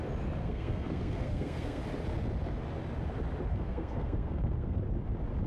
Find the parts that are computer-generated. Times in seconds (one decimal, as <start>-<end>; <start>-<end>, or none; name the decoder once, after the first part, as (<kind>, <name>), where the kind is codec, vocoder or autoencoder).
0.4-1.8 (codec, SNAC); 3.5-4.8